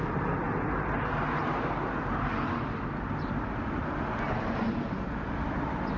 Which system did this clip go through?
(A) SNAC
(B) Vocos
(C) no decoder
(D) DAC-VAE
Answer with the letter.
C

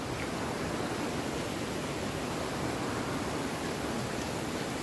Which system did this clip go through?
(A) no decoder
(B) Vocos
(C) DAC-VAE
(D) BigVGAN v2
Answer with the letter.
A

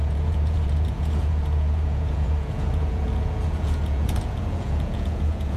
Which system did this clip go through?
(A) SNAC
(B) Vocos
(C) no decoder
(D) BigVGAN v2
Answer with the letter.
B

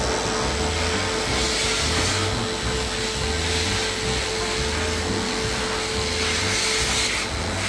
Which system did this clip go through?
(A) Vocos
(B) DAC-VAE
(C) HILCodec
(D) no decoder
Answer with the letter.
D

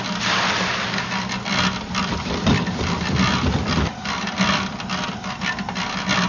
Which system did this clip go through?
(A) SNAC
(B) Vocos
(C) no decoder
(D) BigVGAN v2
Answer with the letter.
C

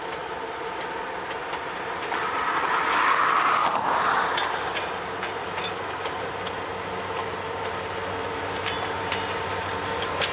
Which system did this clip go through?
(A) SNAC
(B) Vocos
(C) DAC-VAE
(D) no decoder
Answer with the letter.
D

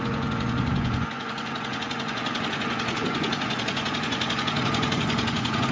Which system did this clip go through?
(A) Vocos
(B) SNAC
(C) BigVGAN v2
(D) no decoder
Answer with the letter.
A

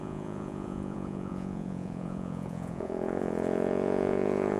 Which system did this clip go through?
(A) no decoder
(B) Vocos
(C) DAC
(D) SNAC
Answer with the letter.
B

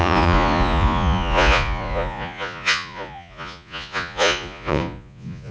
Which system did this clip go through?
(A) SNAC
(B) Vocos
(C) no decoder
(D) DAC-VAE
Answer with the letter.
B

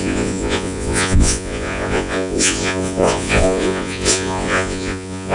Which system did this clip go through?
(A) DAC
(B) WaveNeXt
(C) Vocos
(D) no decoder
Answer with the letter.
C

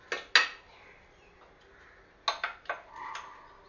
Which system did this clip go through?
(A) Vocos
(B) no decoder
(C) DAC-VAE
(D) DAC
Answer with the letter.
B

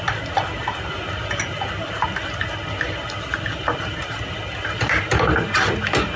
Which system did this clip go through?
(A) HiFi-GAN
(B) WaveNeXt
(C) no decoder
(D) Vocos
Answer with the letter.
C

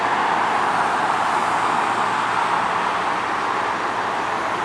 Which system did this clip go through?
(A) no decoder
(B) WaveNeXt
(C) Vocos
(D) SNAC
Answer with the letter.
A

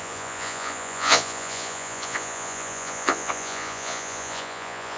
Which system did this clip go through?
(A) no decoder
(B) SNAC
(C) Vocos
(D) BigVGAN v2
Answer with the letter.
C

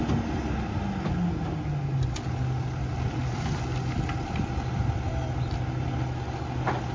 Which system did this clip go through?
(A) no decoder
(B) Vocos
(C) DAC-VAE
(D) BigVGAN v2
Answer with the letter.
A